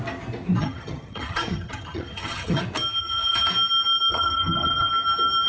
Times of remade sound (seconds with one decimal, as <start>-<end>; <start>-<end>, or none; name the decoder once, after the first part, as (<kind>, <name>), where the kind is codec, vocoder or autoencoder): 0.6-2.6 (vocoder, HiFi-GAN); 3.0-3.5; 4.1-4.9